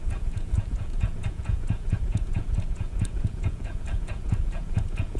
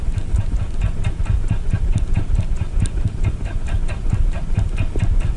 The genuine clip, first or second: second